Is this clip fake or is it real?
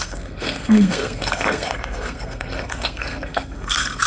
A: fake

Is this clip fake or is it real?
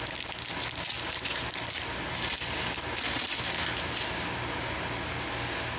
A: real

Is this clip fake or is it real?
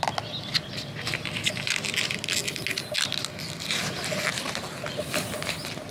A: real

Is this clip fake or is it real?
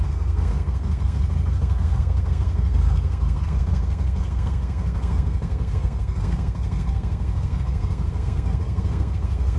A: fake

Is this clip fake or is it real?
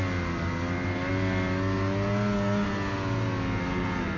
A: real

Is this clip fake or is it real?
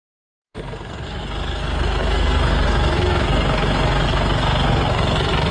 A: fake